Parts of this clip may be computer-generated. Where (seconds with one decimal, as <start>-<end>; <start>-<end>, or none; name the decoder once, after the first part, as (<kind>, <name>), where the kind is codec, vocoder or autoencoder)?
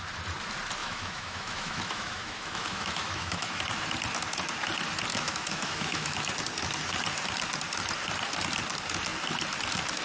0.8-3.6 (autoencoder, DAC-VAE); 5.1-6.3